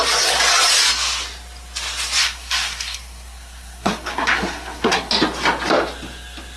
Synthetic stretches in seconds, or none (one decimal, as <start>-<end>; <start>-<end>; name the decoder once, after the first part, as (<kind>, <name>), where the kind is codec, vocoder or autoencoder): 2.2-5.1 (codec, SNAC)

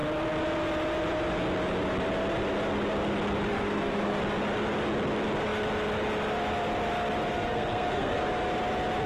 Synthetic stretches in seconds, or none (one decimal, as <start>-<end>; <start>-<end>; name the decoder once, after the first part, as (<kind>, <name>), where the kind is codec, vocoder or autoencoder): 3.5-4.2 (codec, SNAC); 7.3-8.3

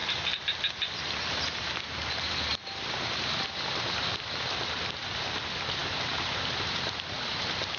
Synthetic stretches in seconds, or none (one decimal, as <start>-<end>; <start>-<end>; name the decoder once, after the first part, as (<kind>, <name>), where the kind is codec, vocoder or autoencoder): none